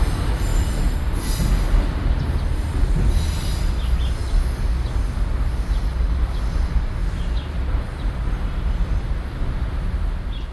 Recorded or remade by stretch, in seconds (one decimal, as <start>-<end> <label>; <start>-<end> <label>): 0.0-0.5 recorded; 0.5-1.0 remade; 1.0-7.0 recorded; 7.0-8.9 remade; 8.9-10.5 recorded